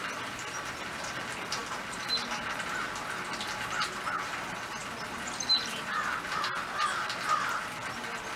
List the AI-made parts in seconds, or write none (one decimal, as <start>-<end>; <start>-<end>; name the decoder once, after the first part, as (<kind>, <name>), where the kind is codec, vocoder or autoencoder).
none